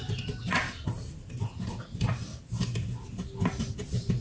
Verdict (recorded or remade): recorded